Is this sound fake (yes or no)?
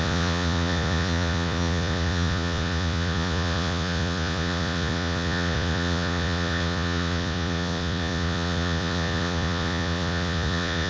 yes